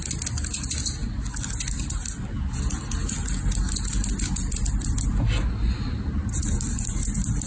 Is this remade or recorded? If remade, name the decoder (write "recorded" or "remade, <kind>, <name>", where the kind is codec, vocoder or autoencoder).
recorded